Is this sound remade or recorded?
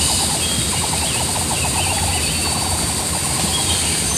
recorded